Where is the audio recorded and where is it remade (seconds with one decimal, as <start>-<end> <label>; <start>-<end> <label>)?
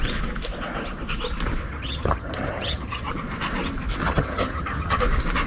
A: 0.0-1.7 recorded; 1.7-3.1 remade; 3.1-4.0 recorded; 4.0-5.0 remade; 5.0-5.5 recorded